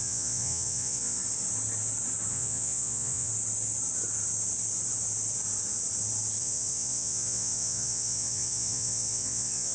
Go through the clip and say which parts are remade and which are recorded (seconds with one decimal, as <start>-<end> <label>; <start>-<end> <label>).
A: 0.0-1.2 remade; 1.2-2.3 recorded; 2.3-3.3 remade; 3.3-6.4 recorded; 6.4-9.7 remade